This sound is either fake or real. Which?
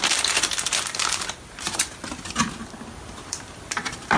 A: real